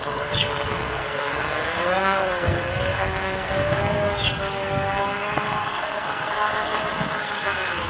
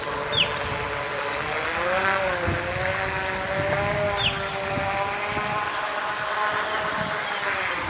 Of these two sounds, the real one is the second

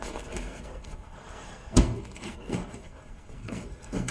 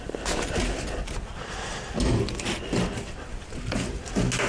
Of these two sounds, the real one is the second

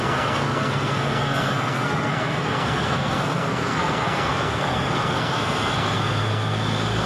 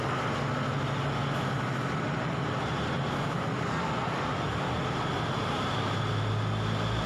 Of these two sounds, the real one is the second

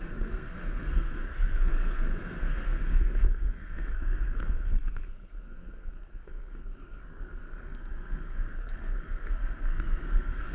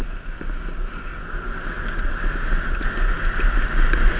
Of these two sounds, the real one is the second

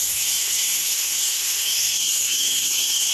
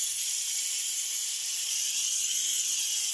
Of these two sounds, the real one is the second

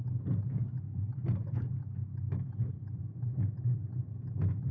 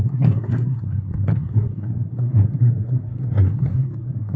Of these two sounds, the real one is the first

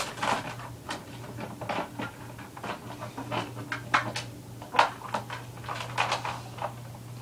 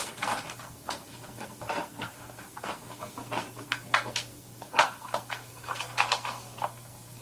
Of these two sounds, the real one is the first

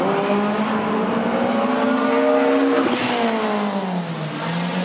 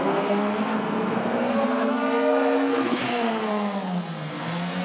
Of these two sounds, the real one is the first